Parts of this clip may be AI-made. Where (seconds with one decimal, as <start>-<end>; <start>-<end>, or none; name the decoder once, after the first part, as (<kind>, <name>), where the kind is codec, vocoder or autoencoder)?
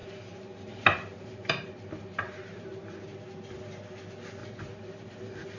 0.0-3.0 (vocoder, BigVGAN v2); 4.4-5.6